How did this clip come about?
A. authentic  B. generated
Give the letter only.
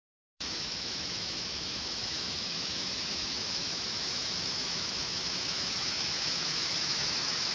B